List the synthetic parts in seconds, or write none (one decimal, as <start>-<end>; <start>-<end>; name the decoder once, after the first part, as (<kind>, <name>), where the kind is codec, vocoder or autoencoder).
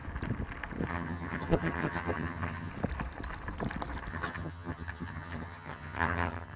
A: 0.9-2.7 (vocoder, HiFi-GAN); 4.1-6.6